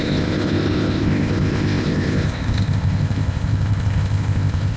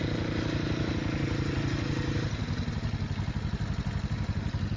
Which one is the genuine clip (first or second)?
second